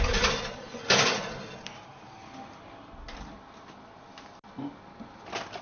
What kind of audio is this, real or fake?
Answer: real